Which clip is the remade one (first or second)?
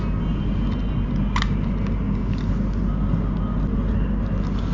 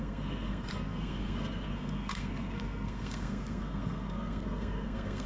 second